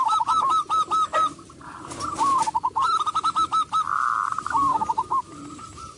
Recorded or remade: recorded